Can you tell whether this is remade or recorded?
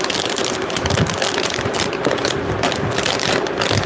remade